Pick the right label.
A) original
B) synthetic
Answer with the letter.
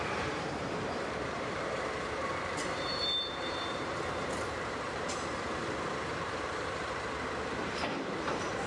B